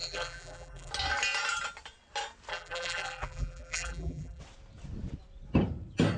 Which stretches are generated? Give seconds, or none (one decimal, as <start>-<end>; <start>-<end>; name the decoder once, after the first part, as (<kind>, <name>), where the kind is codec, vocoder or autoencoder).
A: 0.0-0.9 (vocoder, BigVGAN v2); 2.5-4.4